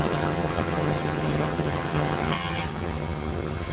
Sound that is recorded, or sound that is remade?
remade